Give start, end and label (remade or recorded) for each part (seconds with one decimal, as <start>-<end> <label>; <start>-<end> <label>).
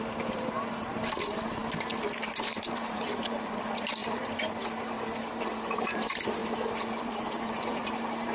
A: 0.0-1.6 remade; 1.6-2.2 recorded; 2.2-6.4 remade; 6.4-7.0 recorded; 7.0-8.3 remade